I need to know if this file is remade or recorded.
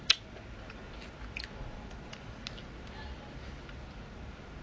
recorded